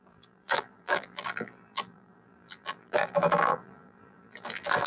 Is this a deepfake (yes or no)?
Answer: yes